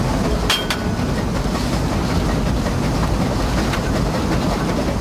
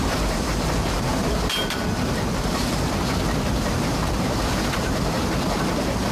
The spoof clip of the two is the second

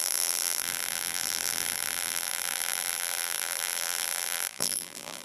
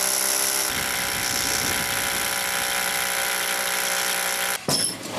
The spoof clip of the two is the first